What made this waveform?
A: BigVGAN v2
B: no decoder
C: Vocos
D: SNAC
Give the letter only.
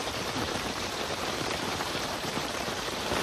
A